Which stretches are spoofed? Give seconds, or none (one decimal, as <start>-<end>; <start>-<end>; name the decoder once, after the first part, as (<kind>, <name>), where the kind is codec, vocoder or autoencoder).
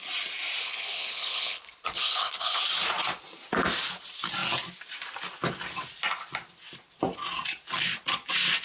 0.6-2.6 (codec, HILCodec)